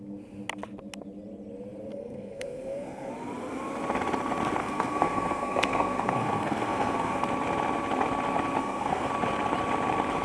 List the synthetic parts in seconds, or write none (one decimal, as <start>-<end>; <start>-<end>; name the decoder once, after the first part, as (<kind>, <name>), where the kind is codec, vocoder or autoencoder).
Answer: 1.9-3.1 (codec, SNAC); 4.6-7.2; 8.6-9.1